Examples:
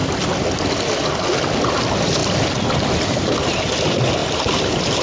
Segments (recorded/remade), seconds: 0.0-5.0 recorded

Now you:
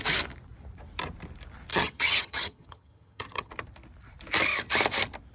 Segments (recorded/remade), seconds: 0.0-1.7 recorded; 1.7-3.5 remade; 3.5-5.3 recorded